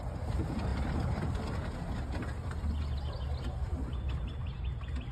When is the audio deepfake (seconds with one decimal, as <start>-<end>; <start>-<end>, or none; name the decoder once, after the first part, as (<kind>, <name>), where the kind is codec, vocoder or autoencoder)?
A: none